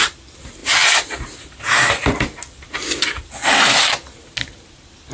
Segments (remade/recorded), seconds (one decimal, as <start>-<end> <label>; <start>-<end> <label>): 0.0-0.6 recorded; 0.6-2.2 remade; 2.2-5.1 recorded